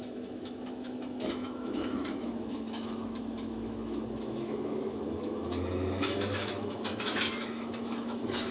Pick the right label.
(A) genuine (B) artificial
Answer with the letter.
B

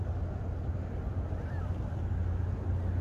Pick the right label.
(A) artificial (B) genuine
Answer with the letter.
B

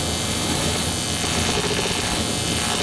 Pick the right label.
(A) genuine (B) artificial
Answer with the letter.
A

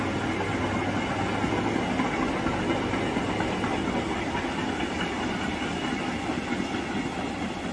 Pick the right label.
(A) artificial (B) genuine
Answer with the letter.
B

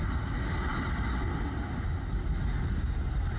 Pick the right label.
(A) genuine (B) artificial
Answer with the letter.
A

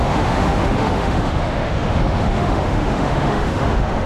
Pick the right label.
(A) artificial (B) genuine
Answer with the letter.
A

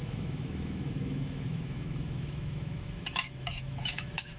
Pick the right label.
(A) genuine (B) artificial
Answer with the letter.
B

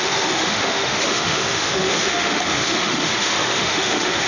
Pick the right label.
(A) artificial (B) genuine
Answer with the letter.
A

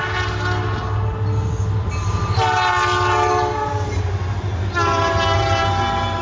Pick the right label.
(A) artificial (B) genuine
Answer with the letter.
B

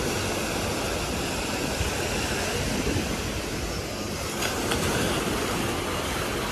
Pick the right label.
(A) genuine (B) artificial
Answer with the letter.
A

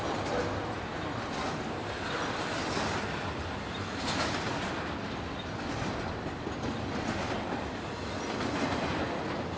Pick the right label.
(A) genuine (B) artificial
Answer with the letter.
A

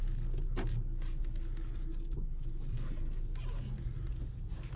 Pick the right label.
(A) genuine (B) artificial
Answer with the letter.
A